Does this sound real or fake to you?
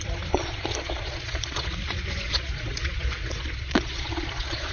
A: fake